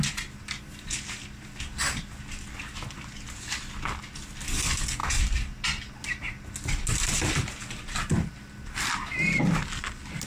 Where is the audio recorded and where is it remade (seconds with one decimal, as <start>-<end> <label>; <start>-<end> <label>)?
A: 0.0-10.3 recorded